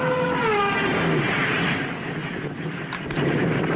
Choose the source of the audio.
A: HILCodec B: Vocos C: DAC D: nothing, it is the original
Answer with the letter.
D